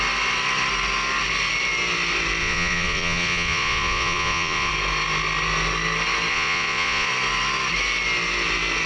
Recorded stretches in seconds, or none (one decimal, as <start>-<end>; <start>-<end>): 0.0-2.4; 4.7-6.3; 7.1-8.9